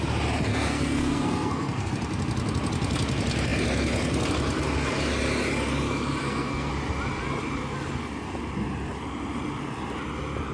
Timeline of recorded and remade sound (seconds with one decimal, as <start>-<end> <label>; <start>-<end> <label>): 0.0-0.5 recorded; 0.5-1.9 remade; 1.9-6.2 recorded; 6.2-6.7 remade; 6.7-10.5 recorded